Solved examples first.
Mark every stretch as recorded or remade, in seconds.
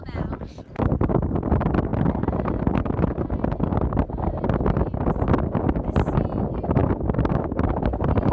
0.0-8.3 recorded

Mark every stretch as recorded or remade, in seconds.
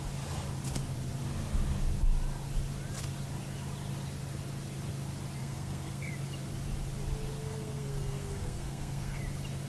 0.0-5.4 recorded; 5.4-6.1 remade; 6.1-7.4 recorded; 7.4-9.2 remade; 9.2-9.7 recorded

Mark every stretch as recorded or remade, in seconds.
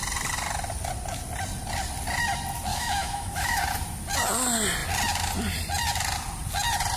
0.0-2.7 recorded; 2.7-3.6 remade; 3.6-7.0 recorded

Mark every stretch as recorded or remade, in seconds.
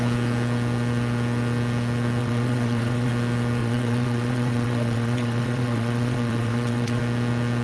0.0-2.2 recorded; 2.2-3.1 remade; 3.1-3.6 recorded; 3.6-7.0 remade; 7.0-7.6 recorded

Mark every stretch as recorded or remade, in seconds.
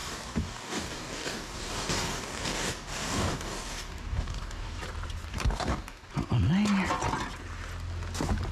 0.0-4.8 remade; 4.8-5.3 recorded; 5.3-6.1 remade; 6.1-8.5 recorded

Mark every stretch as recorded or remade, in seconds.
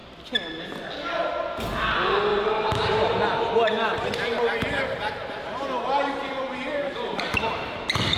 0.0-2.3 recorded; 2.3-7.2 remade; 7.2-8.2 recorded